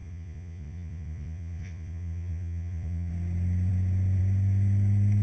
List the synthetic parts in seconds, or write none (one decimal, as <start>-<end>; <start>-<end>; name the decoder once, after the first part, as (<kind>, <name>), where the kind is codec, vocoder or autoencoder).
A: 0.0-3.1 (vocoder, Vocos)